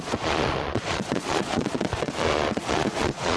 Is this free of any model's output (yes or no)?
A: no